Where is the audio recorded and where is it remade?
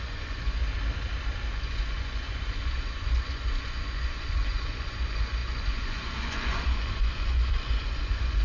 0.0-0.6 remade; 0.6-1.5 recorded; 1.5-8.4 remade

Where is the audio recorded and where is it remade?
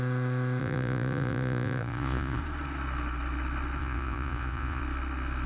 0.0-0.6 recorded; 0.6-2.4 remade; 2.4-3.8 recorded; 3.8-4.8 remade; 4.8-5.5 recorded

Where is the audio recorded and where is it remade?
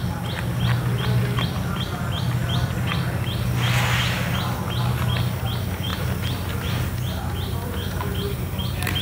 0.0-9.0 recorded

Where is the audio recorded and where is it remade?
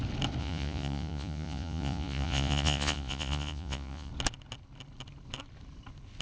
0.0-0.4 recorded; 0.4-4.1 remade; 4.1-6.2 recorded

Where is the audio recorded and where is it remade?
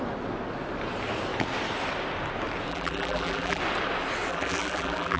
0.0-2.7 recorded; 2.7-3.6 remade; 3.6-4.3 recorded; 4.3-5.2 remade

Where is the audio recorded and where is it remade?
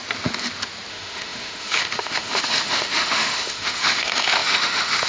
0.0-0.9 recorded; 0.9-5.1 remade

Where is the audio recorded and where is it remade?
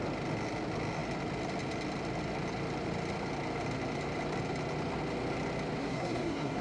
0.0-5.8 recorded; 5.8-6.6 remade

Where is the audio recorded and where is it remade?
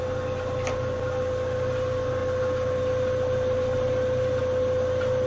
0.0-5.3 recorded